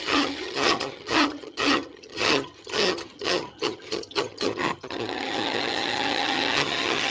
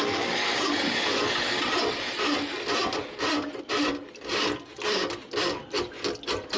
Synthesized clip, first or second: first